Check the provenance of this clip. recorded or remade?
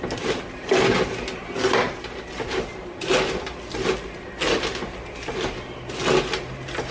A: recorded